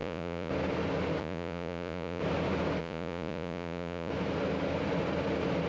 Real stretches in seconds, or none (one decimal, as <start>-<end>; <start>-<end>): 0.5-1.2; 2.2-2.8; 4.1-5.7